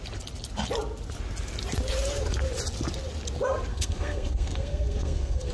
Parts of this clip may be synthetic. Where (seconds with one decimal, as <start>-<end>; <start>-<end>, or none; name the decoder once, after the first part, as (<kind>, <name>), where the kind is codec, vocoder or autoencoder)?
3.7-5.5 (codec, SNAC)